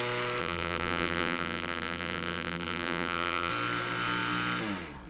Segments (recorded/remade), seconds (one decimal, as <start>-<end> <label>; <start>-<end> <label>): 0.0-0.4 recorded; 0.4-3.5 remade; 3.5-5.1 recorded